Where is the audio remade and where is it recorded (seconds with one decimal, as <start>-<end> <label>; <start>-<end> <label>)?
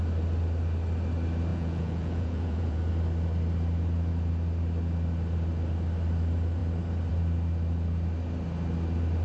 0.0-1.5 recorded; 1.5-2.9 remade; 2.9-9.2 recorded